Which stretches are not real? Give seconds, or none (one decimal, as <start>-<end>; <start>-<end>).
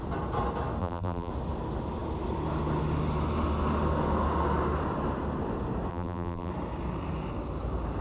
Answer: 0.8-1.3; 5.9-6.5